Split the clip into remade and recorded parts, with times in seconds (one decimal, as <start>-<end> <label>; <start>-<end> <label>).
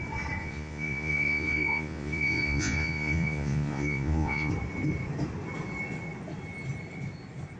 0.0-0.4 recorded; 0.4-4.5 remade; 4.5-7.6 recorded